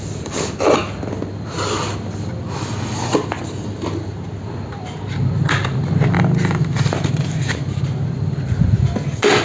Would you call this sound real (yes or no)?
yes